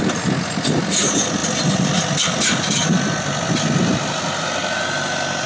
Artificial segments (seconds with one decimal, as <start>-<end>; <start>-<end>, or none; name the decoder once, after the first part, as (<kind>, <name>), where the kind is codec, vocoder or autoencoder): none